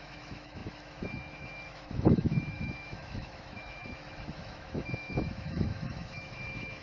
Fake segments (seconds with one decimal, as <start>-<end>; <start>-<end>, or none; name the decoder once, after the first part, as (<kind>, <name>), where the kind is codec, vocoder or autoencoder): 0.0-6.8 (autoencoder, DAC-VAE)